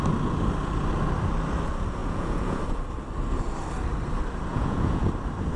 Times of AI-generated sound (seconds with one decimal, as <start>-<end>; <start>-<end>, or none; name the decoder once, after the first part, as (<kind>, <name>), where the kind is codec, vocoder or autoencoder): 2.0-2.6 (vocoder, Vocos); 4.5-5.1